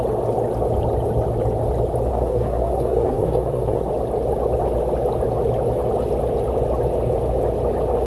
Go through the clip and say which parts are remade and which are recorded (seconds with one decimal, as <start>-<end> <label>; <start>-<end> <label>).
0.0-2.1 recorded; 2.1-3.9 remade; 3.9-8.1 recorded